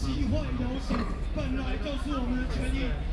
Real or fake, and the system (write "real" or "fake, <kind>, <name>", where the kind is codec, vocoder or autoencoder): real